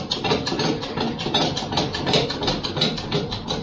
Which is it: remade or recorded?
recorded